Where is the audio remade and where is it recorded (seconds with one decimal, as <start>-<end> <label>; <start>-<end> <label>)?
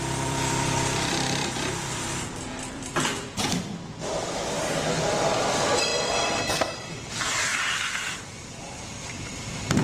0.0-9.8 remade